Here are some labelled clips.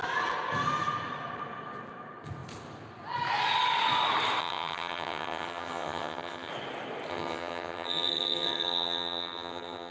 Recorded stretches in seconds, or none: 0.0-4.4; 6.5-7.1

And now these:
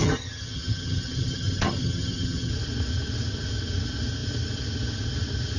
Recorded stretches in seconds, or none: 2.5-5.6

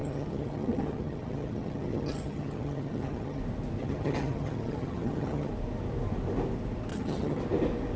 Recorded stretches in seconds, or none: 3.4-3.8; 5.5-6.9; 7.4-8.0

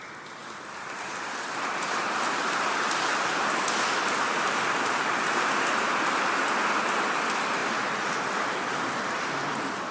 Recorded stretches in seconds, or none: 0.0-9.9

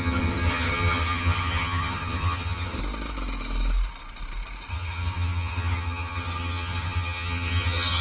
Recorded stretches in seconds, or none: 2.8-4.7

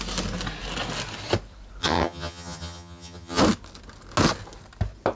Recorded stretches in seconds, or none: 0.0-1.8; 3.4-5.2

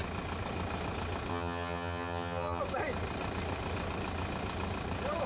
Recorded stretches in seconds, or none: 0.0-1.3; 2.6-5.3